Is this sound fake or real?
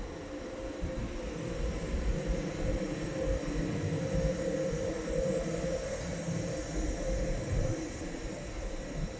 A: real